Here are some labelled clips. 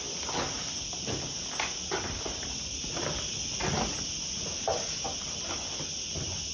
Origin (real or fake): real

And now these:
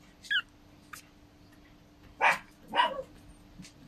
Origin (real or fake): real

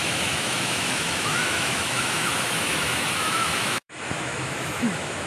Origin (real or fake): fake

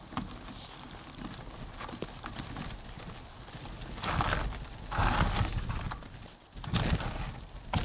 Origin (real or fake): real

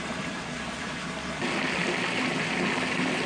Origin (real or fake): real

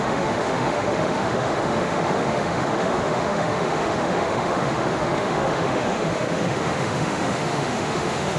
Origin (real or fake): fake